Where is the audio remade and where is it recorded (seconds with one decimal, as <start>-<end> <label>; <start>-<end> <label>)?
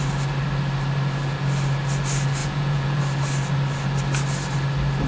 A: 0.0-2.4 recorded; 2.4-3.0 remade; 3.0-5.1 recorded